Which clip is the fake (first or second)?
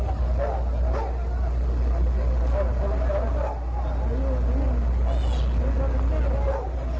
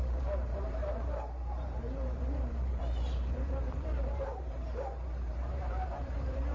second